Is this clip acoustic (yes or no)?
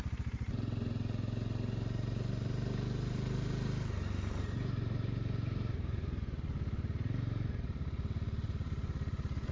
yes